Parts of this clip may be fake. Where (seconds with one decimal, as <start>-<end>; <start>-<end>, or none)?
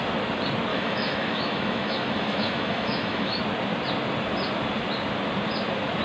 0.7-3.4